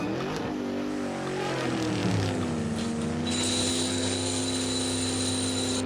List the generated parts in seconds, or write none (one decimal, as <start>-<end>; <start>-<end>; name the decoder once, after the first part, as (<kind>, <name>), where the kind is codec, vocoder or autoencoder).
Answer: 3.7-4.4 (codec, SNAC)